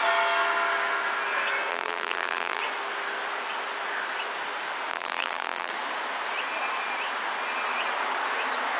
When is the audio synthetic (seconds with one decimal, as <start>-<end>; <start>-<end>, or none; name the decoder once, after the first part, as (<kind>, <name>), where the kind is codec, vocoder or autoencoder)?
1.7-2.6 (vocoder, BigVGAN v2); 4.9-5.7